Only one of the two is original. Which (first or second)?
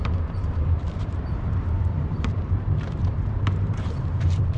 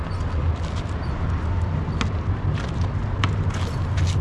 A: second